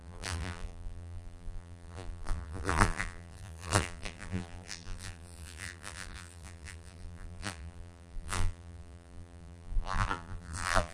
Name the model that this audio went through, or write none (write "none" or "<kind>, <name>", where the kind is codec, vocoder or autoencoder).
vocoder, BigVGAN v2